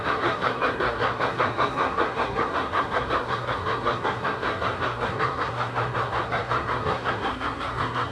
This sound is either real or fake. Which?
fake